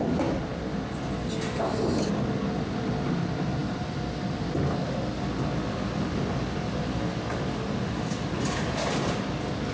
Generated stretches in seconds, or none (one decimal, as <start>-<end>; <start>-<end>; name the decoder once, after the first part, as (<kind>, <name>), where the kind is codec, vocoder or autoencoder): none